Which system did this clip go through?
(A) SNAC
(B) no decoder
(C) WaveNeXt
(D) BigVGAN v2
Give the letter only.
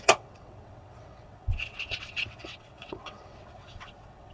C